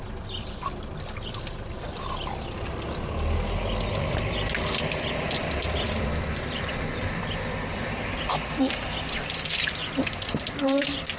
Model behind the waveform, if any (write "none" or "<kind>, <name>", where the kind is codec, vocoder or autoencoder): vocoder, BigVGAN v2